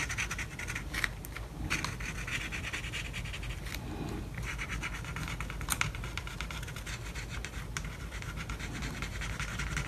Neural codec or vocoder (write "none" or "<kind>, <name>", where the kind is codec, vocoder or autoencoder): none